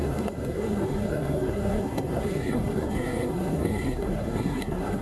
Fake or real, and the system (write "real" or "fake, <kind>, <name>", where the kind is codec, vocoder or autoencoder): fake, codec, SNAC